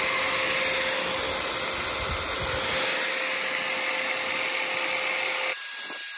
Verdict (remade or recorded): recorded